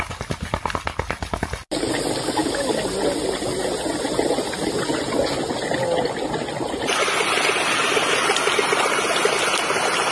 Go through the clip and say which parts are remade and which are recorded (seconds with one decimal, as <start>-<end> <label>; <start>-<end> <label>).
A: 0.0-10.1 recorded

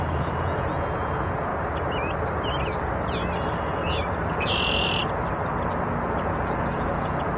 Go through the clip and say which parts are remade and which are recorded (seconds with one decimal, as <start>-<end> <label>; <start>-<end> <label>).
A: 0.0-1.5 remade; 1.5-4.3 recorded; 4.3-5.0 remade; 5.0-6.1 recorded; 6.1-7.4 remade